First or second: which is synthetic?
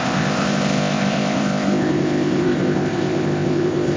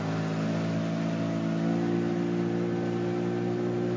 first